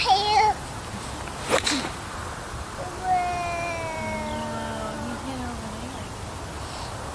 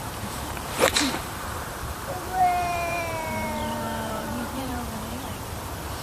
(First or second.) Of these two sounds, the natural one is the first